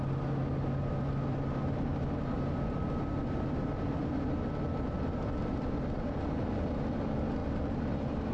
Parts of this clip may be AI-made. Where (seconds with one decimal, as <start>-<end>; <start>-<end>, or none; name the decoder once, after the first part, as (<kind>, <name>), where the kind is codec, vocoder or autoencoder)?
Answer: 7.4-7.9 (vocoder, BigVGAN v2)